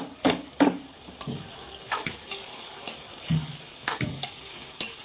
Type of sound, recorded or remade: remade